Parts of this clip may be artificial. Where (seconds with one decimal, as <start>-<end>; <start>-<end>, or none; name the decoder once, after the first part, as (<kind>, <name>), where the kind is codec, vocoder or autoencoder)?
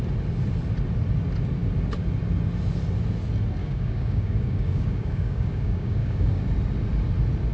3.6-6.4 (codec, DAC)